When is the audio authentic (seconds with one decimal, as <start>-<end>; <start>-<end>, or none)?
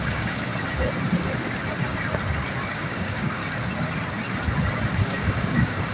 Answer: 0.5-2.7; 3.4-4.9